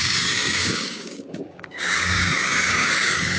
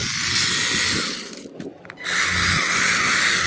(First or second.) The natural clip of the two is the second